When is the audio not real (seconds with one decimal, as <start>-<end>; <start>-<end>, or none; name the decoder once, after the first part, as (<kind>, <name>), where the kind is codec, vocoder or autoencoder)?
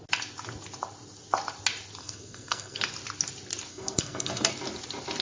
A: 2.0-2.8 (codec, SNAC); 3.7-4.5